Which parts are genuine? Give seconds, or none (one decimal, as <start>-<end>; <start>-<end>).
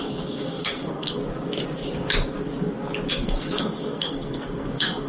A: 1.2-3.1